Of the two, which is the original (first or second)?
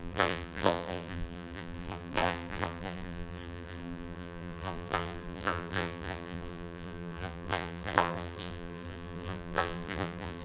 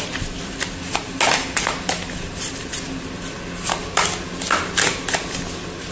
second